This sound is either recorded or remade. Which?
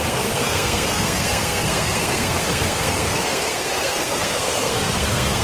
remade